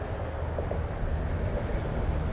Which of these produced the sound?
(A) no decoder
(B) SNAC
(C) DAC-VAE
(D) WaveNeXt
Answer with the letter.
A